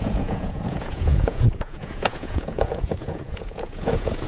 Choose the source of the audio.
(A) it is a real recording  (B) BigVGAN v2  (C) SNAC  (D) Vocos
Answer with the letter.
D